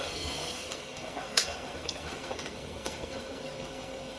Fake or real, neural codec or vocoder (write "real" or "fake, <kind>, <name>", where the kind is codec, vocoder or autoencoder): fake, codec, SNAC